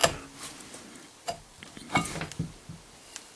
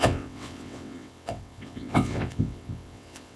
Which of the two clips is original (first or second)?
first